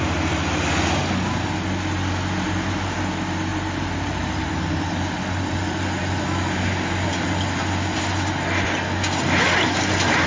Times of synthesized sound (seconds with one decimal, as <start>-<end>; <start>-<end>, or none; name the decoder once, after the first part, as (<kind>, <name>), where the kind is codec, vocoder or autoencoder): none